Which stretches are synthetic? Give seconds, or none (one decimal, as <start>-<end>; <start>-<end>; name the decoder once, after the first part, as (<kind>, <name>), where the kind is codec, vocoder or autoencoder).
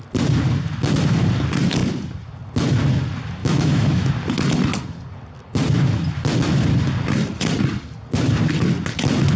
3.4-4.1 (autoencoder, DAC-VAE)